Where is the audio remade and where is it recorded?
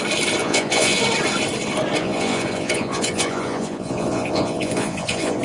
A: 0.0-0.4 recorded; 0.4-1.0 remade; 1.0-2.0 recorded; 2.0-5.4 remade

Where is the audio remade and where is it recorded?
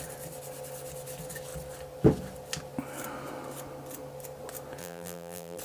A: 0.0-4.8 recorded; 4.8-5.6 remade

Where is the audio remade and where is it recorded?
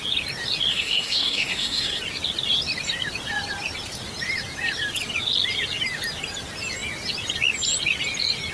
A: 0.0-0.7 recorded; 0.7-2.0 remade; 2.0-8.5 recorded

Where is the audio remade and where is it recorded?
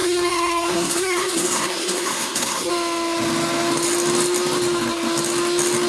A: 0.0-2.7 remade; 2.7-5.9 recorded